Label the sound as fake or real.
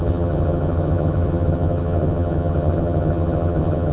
fake